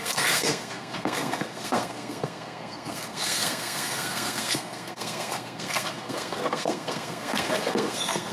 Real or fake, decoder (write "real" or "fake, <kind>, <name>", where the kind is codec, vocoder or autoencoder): fake, codec, SNAC